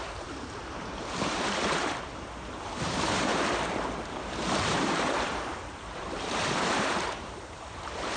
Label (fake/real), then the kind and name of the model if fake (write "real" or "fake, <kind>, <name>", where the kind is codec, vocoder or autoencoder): fake, vocoder, BigVGAN v2